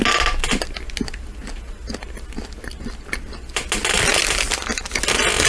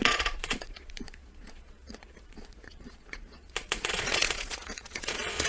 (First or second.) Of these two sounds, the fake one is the second